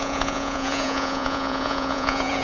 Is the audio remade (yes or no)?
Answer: yes